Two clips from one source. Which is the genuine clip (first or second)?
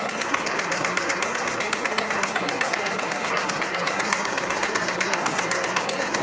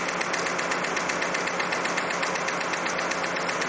second